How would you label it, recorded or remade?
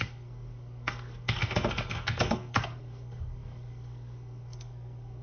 remade